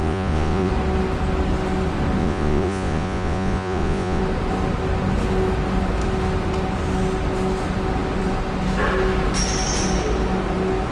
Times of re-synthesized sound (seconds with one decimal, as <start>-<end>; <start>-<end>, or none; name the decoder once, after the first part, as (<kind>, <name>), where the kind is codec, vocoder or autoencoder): 0.0-0.7 (vocoder, Vocos); 2.2-4.2